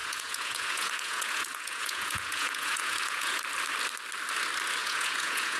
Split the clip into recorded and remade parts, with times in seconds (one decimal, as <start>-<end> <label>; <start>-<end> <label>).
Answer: 0.0-3.4 remade; 3.4-4.8 recorded; 4.8-5.6 remade